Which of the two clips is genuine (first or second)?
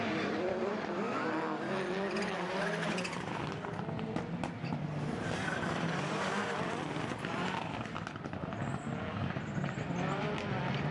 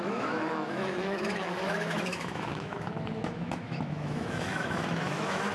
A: first